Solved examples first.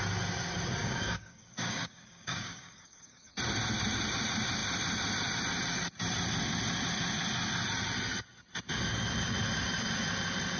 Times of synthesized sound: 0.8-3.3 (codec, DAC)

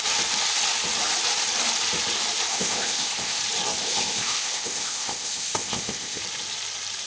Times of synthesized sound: 2.5-3.4 (codec, ZipCodec); 3.8-6.2

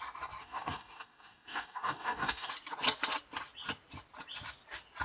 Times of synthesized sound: 0.4-2.5 (codec, DAC)

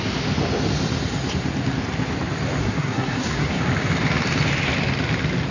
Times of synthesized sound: 2.6-3.6 (codec, SNAC)